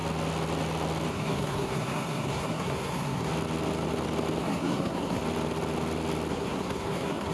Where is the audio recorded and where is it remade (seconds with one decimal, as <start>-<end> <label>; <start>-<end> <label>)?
0.0-1.1 recorded; 1.1-3.3 remade; 3.3-4.4 recorded; 4.4-5.2 remade; 5.2-6.3 recorded; 6.3-7.3 remade

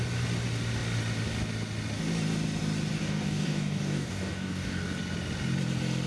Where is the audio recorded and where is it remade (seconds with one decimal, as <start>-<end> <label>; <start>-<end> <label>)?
0.0-3.0 recorded; 3.0-5.0 remade; 5.0-6.1 recorded

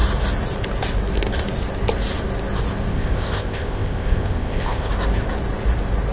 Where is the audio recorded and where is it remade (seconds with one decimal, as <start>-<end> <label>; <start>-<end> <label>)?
0.0-2.9 recorded; 2.9-4.9 remade; 4.9-6.1 recorded

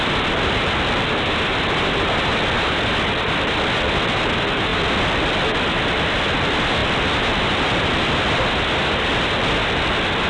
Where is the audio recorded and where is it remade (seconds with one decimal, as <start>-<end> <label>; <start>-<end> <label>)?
0.0-10.3 recorded

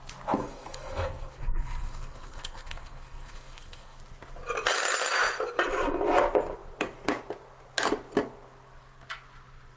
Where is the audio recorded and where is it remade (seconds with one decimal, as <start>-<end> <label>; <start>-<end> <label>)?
0.0-0.4 recorded; 0.4-4.0 remade; 4.0-9.8 recorded

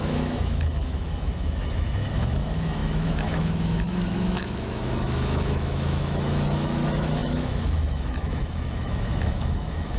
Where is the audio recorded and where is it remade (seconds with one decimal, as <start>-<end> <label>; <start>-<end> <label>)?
0.0-10.0 remade

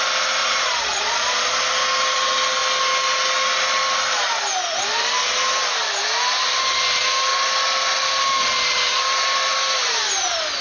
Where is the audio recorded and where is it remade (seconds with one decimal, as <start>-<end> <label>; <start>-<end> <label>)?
0.0-0.4 recorded; 0.4-1.6 remade; 1.6-10.6 recorded

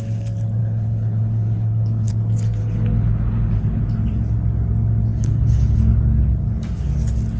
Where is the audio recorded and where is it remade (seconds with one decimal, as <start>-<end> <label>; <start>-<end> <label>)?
0.0-0.6 recorded; 0.6-2.1 remade; 2.1-2.6 recorded; 2.6-3.8 remade; 3.8-5.1 recorded; 5.1-5.8 remade; 5.8-7.4 recorded